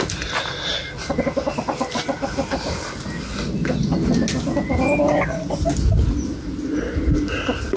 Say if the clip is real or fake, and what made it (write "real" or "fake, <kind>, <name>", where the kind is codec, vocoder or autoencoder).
real